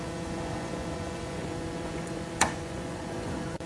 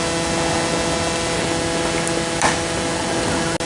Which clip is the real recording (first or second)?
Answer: second